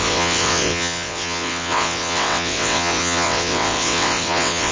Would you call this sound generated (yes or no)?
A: yes